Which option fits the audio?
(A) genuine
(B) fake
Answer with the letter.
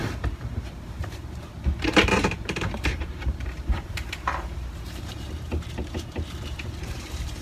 B